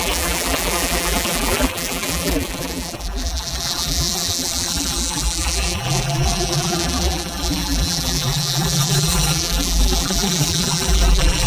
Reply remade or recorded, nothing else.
remade